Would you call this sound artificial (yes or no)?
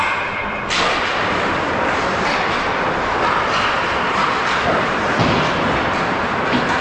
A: yes